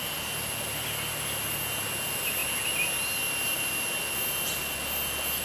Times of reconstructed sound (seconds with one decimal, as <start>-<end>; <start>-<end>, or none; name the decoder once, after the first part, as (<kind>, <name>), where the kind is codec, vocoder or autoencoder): none